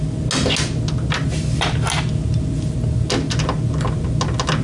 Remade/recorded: recorded